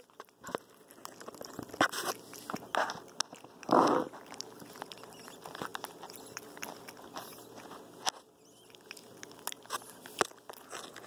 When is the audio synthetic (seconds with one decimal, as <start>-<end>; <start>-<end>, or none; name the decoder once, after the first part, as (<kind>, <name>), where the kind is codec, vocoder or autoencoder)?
none